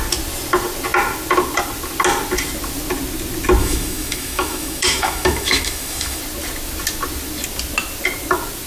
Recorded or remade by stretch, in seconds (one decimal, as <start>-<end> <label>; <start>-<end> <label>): 0.0-3.6 recorded; 3.6-6.2 remade; 6.2-8.7 recorded